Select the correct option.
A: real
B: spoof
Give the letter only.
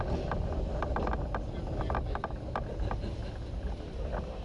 A